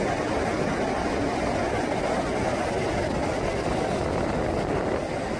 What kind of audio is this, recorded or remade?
recorded